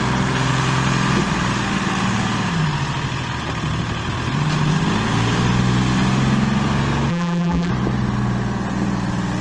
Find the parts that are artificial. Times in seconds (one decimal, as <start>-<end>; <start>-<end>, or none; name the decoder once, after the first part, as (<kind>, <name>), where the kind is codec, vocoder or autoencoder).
7.1-7.7 (vocoder, BigVGAN v2)